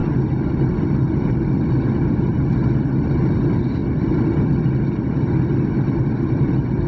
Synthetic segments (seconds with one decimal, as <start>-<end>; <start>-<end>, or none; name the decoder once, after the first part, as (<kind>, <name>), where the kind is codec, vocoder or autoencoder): none